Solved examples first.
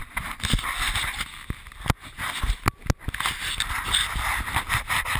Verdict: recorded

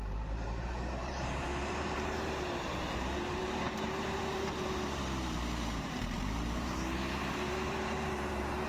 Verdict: remade